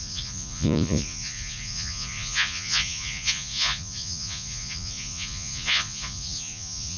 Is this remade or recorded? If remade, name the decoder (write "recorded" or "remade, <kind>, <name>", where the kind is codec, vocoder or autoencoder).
remade, vocoder, Vocos